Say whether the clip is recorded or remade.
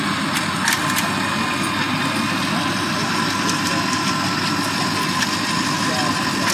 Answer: recorded